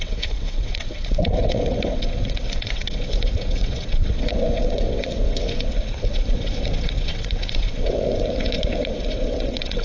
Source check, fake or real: fake